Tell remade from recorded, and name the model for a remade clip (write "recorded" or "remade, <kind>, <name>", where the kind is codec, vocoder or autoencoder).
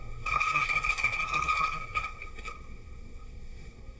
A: remade, codec, SNAC